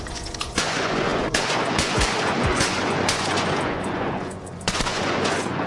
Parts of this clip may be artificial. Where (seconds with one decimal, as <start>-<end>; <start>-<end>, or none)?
0.0-5.7